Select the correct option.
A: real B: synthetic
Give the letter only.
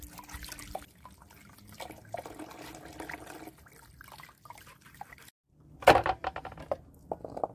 A